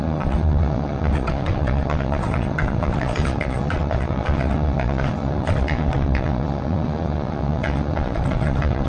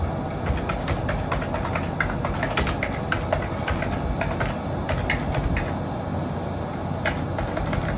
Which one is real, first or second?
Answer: second